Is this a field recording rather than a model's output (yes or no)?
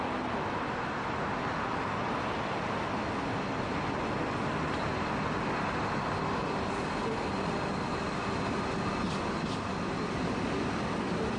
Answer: yes